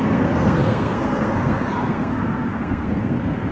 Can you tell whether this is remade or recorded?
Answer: remade